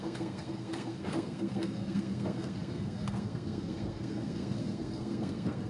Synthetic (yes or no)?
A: yes